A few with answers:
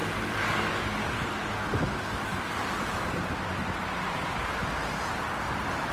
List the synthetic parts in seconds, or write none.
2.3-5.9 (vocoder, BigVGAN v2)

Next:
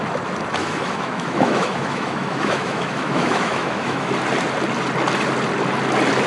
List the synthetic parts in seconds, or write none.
0.6-4.1 (autoencoder, DAC-VAE)

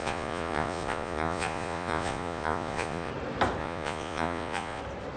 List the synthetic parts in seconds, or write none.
0.0-3.1 (vocoder, Vocos); 3.6-4.8